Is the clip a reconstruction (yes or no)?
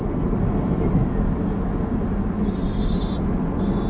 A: no